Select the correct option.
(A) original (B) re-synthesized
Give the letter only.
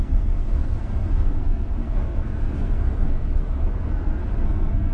B